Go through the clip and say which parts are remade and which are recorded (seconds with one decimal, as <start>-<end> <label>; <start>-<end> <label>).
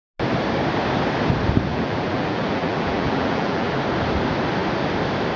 0.0-1.7 recorded; 1.7-3.8 remade; 3.8-5.4 recorded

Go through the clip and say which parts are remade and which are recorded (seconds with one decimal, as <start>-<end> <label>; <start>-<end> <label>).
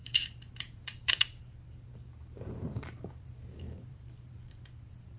0.0-5.2 remade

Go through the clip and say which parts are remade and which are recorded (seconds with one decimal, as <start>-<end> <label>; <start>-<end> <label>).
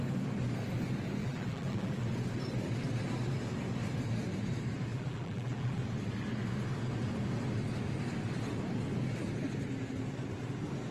0.0-1.2 recorded; 1.2-2.0 remade; 2.0-4.9 recorded; 4.9-5.8 remade; 5.8-10.9 recorded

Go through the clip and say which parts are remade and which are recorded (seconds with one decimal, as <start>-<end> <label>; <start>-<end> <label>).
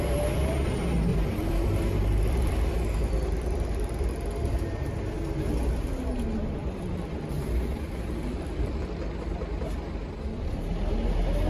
0.0-1.1 recorded; 1.1-4.1 remade; 4.1-6.6 recorded; 6.6-10.7 remade; 10.7-11.5 recorded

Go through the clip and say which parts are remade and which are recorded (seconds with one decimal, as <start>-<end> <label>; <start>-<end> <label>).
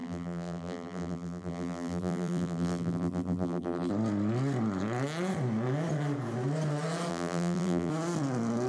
0.0-3.9 remade; 3.9-7.1 recorded; 7.1-7.9 remade; 7.9-8.7 recorded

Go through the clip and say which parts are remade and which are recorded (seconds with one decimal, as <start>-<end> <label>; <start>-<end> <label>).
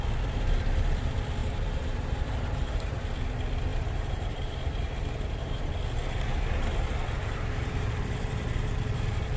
0.0-1.4 recorded; 1.4-3.0 remade; 3.0-3.7 recorded; 3.7-5.7 remade; 5.7-7.2 recorded; 7.2-9.4 remade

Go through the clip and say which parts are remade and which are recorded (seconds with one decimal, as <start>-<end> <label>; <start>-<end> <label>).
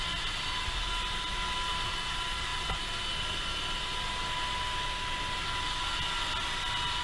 0.0-7.0 recorded